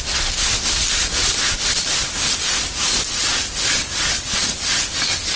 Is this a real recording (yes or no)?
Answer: yes